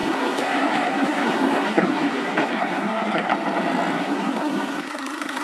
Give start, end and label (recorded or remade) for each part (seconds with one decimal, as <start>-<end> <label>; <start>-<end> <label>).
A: 0.0-3.3 remade; 3.3-3.9 recorded; 3.9-5.4 remade